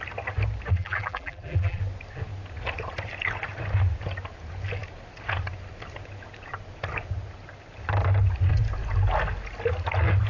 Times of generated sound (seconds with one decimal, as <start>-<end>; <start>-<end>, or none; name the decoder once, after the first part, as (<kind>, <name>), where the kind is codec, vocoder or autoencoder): 0.7-1.8 (vocoder, BigVGAN v2)